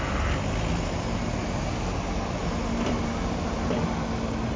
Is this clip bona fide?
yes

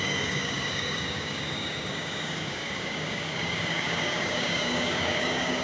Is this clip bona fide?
no